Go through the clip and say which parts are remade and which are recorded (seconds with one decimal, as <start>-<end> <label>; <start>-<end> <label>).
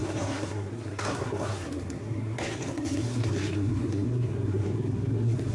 0.0-5.5 remade